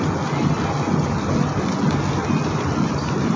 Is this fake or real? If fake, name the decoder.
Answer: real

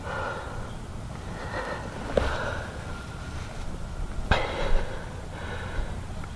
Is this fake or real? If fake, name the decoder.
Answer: real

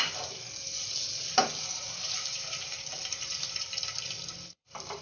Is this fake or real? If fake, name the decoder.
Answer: fake, vocoder, BigVGAN v2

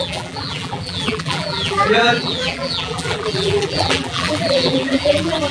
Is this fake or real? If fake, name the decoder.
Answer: fake, vocoder, BigVGAN v2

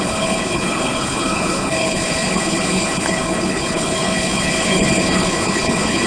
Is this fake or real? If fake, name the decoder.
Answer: fake, codec, HILCodec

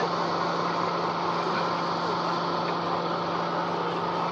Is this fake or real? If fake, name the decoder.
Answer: real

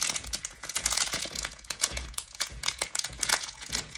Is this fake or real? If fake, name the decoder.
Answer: fake, vocoder, Vocos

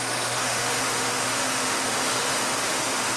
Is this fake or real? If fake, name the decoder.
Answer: fake, autoencoder, DAC-VAE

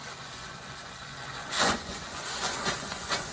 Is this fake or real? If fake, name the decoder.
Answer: fake, vocoder, Vocos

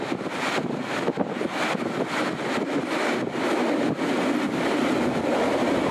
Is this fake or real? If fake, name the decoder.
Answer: real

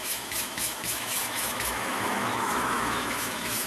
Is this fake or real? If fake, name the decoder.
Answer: fake, autoencoder, DAC-VAE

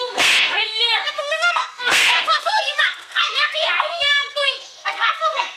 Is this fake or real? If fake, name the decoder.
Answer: fake, codec, SNAC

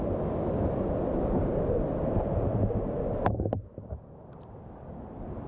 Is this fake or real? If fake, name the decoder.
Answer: real